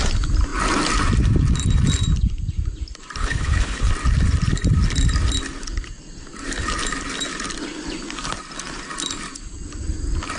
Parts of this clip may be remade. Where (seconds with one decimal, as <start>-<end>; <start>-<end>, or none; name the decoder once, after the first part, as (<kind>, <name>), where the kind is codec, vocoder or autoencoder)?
3.2-3.9 (codec, HILCodec)